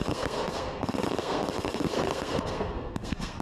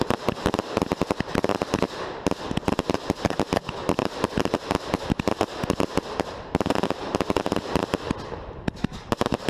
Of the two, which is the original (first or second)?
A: second